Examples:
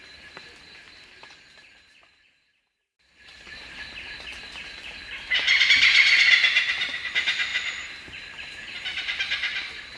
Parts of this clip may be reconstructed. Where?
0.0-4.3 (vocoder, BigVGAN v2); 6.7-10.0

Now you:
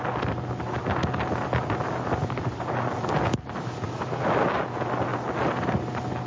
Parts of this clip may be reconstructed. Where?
none

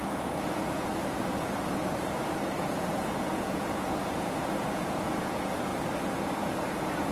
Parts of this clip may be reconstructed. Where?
0.0-0.9 (vocoder, Vocos); 2.9-5.7; 6.4-7.1

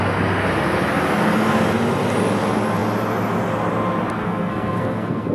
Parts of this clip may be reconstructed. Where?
4.2-5.3 (codec, SNAC)